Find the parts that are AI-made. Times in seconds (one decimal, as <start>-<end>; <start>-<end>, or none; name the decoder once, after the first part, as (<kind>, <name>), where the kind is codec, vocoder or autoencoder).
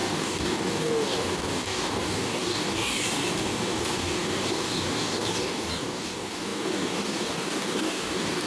0.0-8.5 (codec, DAC)